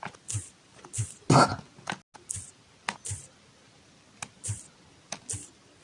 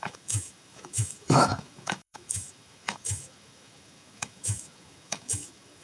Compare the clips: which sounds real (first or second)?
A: first